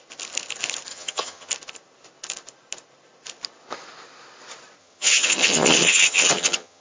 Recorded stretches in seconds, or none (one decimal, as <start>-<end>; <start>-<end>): 0.0-0.9; 1.5-4.8